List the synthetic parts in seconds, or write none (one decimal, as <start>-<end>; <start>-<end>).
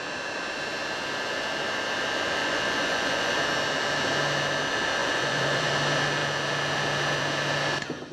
2.4-3.3; 5.0-5.7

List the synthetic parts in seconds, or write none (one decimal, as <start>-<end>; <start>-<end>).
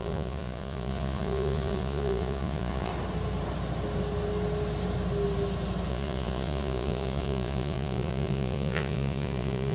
0.0-2.9; 5.9-9.7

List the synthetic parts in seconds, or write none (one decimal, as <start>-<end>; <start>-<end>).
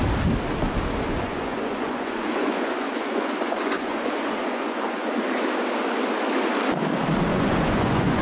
1.1-5.1; 7.3-8.2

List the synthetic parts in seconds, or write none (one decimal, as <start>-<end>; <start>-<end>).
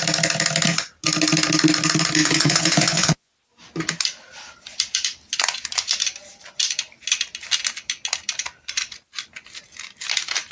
2.2-3.3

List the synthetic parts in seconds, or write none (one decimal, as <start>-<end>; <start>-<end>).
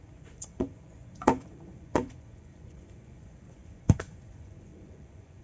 0.0-5.4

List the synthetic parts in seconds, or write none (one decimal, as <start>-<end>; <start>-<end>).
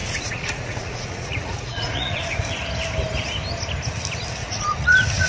0.0-2.2; 4.4-5.3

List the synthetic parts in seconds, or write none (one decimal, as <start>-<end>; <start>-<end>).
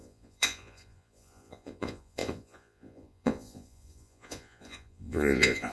0.0-5.7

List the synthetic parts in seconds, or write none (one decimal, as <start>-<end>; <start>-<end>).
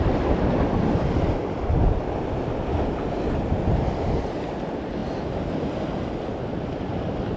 none